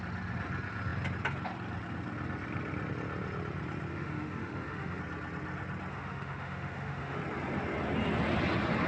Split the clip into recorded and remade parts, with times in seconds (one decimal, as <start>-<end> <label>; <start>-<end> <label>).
0.0-3.9 recorded; 3.9-5.0 remade; 5.0-5.9 recorded; 5.9-7.2 remade; 7.2-8.9 recorded